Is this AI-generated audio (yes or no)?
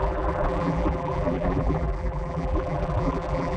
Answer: yes